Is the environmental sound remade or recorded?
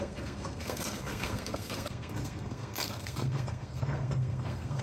remade